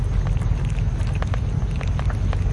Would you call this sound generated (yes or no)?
no